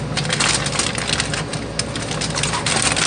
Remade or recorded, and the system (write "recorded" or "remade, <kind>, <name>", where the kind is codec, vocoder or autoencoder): recorded